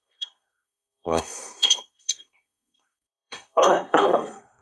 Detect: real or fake fake